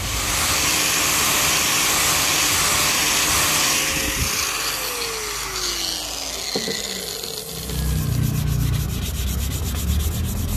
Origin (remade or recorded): recorded